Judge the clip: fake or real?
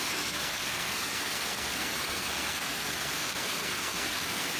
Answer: fake